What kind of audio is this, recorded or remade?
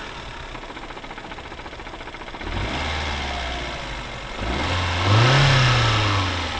recorded